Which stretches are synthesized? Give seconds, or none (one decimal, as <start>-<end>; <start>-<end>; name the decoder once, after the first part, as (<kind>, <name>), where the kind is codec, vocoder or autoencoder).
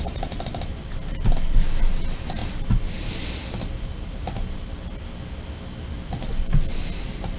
none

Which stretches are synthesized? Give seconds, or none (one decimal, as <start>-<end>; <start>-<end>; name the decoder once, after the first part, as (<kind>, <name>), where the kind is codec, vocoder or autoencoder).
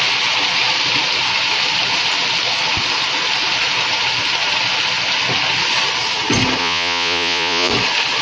6.6-7.7 (vocoder, Vocos)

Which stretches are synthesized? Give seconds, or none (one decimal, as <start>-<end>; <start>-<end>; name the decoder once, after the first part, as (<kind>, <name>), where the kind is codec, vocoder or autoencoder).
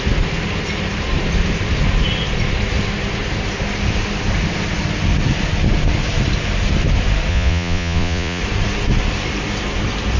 7.3-8.4 (vocoder, Vocos)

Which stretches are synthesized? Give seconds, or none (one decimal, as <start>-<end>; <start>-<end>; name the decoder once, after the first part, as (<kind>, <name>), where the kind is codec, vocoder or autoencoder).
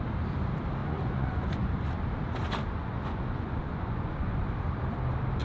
0.8-1.7 (vocoder, Vocos); 2.8-4.4